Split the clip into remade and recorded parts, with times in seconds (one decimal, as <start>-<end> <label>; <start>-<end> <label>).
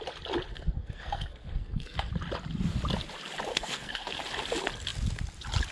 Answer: 0.0-0.5 recorded; 0.5-2.1 remade; 2.1-3.5 recorded; 3.5-4.2 remade; 4.2-5.7 recorded